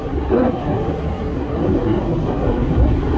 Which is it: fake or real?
fake